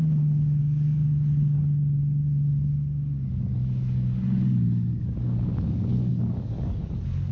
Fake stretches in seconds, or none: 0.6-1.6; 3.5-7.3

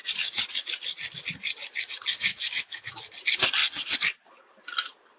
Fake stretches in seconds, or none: 2.3-2.9

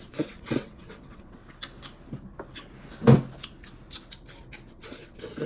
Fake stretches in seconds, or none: 0.0-1.4; 4.7-5.5

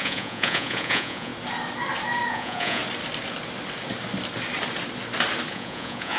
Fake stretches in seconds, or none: 0.0-1.3; 2.3-2.8; 5.5-6.2

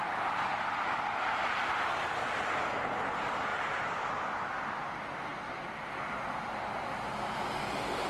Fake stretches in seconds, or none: none

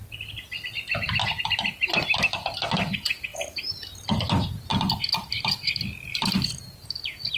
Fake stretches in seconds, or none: 3.3-4.1

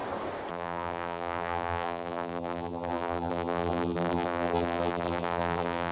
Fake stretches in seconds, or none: 0.5-5.9

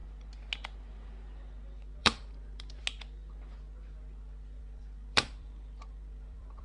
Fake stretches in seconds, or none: 2.0-2.8; 4.6-6.6